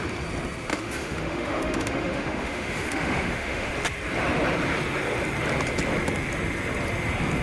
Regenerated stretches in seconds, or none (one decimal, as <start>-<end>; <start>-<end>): 0.7-3.7